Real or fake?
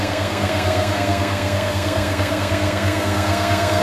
fake